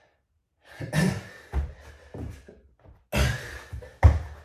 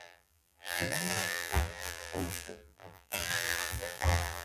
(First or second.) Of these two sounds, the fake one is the second